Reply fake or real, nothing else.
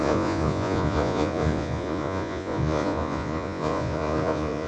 fake